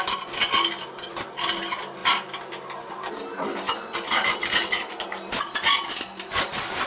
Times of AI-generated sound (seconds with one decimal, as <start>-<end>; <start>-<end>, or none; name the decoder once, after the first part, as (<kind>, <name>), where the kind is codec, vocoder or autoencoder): none